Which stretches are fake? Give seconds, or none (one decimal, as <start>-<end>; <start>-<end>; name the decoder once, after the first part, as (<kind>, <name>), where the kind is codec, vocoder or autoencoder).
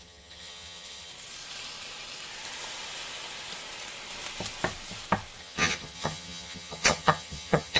0.0-1.1 (vocoder, HiFi-GAN); 5.4-7.8